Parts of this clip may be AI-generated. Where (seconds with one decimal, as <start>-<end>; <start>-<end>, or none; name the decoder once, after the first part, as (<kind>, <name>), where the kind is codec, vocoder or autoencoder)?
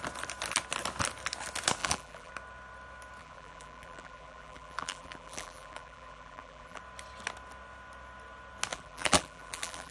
1.8-2.3 (vocoder, BigVGAN v2); 3.2-6.8; 8.7-9.9